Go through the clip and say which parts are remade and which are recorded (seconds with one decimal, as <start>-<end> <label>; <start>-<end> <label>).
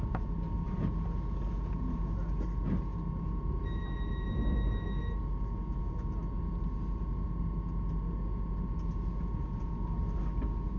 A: 0.0-10.8 recorded